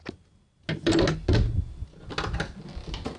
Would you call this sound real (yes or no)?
yes